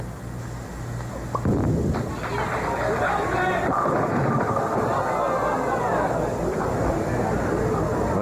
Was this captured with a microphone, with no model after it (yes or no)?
yes